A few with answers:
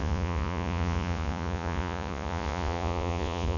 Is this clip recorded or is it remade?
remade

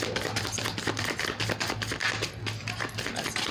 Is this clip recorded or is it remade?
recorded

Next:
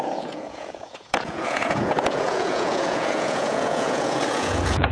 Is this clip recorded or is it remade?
remade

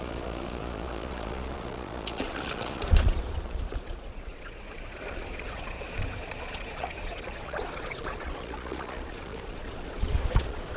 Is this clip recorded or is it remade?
remade